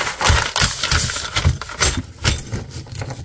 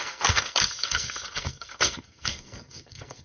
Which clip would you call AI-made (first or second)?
second